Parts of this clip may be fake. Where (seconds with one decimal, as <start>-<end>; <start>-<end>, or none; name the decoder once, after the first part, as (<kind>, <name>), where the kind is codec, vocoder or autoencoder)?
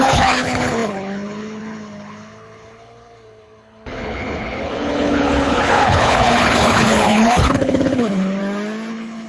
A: 0.0-8.4 (codec, HILCodec); 8.9-9.3